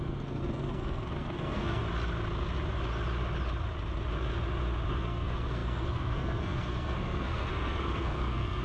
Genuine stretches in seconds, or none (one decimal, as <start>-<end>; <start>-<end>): 1.8-4.9